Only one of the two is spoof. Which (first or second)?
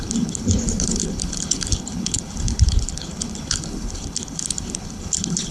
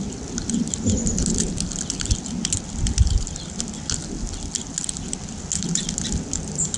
first